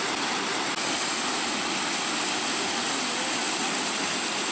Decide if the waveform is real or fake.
real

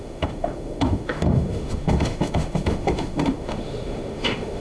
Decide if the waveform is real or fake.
fake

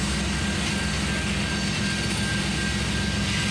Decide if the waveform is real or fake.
real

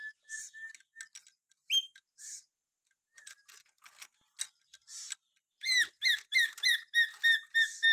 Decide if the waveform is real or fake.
real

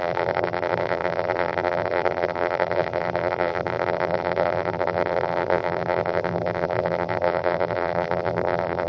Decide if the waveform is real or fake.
fake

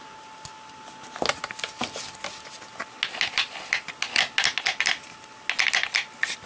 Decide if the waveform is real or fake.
real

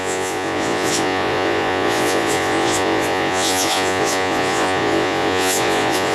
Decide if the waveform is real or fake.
fake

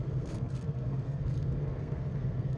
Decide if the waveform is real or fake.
fake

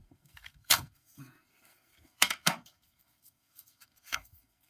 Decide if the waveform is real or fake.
fake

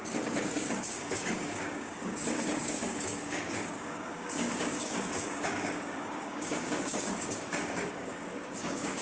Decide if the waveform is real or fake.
fake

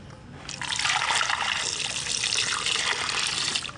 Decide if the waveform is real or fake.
real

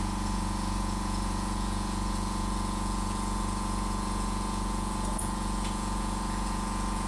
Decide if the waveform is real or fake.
fake